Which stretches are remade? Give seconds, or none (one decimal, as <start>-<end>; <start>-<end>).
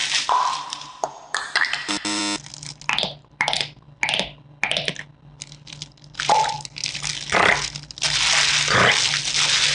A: 0.0-2.2